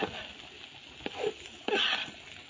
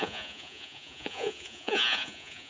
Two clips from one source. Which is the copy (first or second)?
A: second